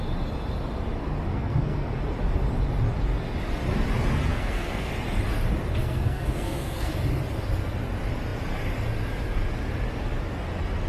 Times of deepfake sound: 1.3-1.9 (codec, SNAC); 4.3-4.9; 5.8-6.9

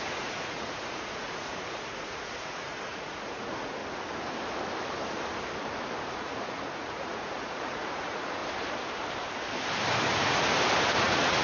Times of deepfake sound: 0.0-3.8 (vocoder, Vocos); 6.1-8.4; 11.0-11.4

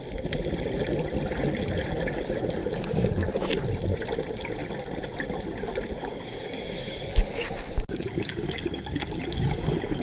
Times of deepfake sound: 2.6-3.1 (codec, DAC); 6.0-10.0